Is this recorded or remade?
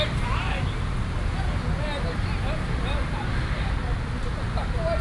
recorded